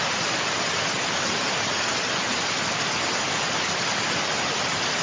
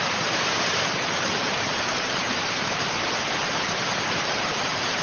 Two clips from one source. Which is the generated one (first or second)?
second